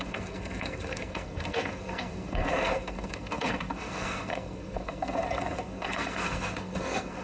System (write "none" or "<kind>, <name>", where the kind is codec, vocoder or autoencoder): codec, SNAC